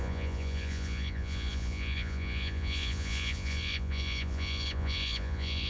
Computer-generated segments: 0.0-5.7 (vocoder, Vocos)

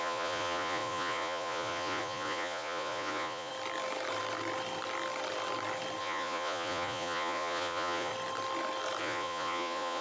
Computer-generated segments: 0.0-3.5 (vocoder, Vocos); 6.0-8.1; 9.0-10.0

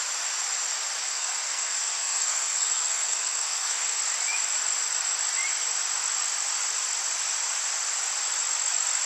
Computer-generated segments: 1.0-4.0 (codec, SNAC)

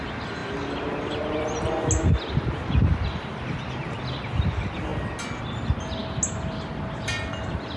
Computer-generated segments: none